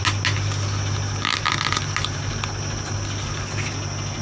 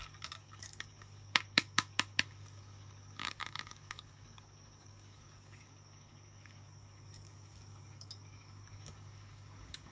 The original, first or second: first